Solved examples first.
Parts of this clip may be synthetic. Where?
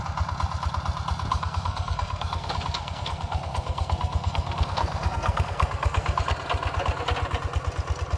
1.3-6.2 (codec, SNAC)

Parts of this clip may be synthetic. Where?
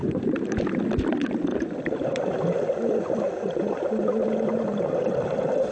0.0-0.8 (vocoder, BigVGAN v2); 1.5-4.9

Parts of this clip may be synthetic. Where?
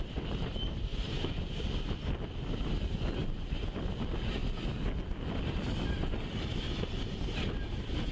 0.9-1.8 (vocoder, BigVGAN v2); 3.2-3.8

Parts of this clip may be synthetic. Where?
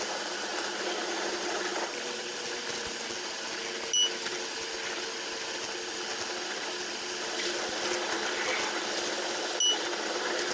0.5-1.5 (vocoder, BigVGAN v2)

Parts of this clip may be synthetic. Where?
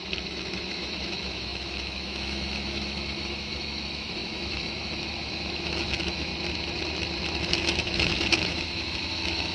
0.0-6.3 (autoencoder, DAC-VAE); 7.4-9.5